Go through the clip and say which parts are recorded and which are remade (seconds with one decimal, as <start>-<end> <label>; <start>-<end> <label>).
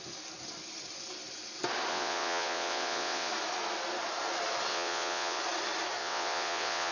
0.0-1.9 recorded; 1.9-3.3 remade; 3.3-4.7 recorded; 4.7-5.4 remade; 5.4-6.0 recorded; 6.0-6.9 remade